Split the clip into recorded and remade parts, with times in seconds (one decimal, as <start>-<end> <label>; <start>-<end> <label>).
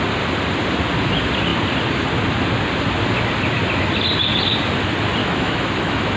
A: 0.0-5.2 recorded; 5.2-6.2 remade